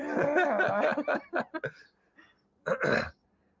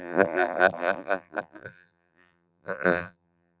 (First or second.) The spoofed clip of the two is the second